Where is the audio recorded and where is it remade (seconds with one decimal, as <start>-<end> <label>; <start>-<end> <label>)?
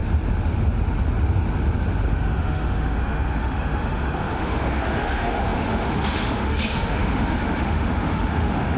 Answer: 0.0-2.1 recorded; 2.1-8.8 remade